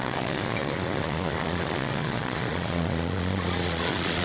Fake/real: fake